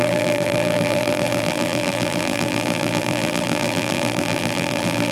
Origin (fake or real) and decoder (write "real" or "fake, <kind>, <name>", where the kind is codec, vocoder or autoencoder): fake, vocoder, BigVGAN v2